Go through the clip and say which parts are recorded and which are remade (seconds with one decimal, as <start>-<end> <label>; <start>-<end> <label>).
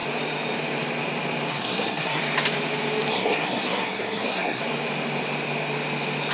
0.0-1.5 recorded; 1.5-2.2 remade; 2.2-3.1 recorded; 3.1-4.6 remade; 4.6-6.3 recorded